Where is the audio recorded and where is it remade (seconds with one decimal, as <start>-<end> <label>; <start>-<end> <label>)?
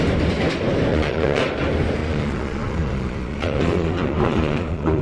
0.0-0.9 recorded; 0.9-1.4 remade; 1.4-2.0 recorded; 2.0-5.0 remade